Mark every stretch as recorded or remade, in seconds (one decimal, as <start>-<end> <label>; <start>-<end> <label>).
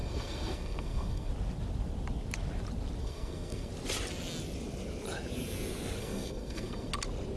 0.0-1.3 remade; 1.3-3.0 recorded; 3.0-3.7 remade; 3.7-6.0 recorded; 6.0-6.9 remade; 6.9-7.4 recorded